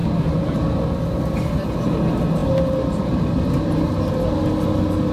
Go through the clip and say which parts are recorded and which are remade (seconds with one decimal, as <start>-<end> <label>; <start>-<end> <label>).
0.0-5.1 recorded